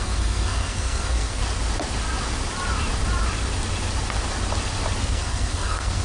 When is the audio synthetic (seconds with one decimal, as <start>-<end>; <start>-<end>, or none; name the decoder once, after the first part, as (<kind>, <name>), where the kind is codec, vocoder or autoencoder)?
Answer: 0.0-1.4 (codec, SNAC); 5.0-6.0